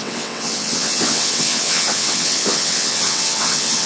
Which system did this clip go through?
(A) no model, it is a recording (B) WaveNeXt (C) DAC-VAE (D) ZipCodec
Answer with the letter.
B